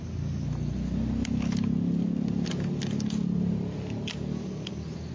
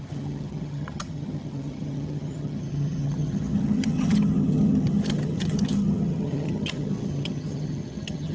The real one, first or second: first